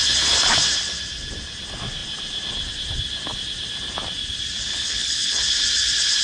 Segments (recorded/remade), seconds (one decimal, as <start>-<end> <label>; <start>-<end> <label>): 0.0-4.7 recorded; 4.7-5.4 remade; 5.4-6.2 recorded